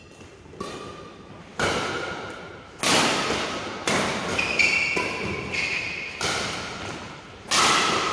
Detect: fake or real real